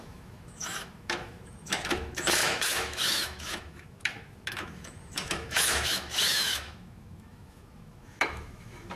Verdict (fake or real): fake